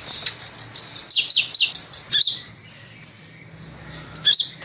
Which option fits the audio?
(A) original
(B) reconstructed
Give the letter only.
A